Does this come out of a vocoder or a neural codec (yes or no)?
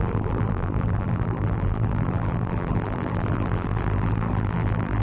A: yes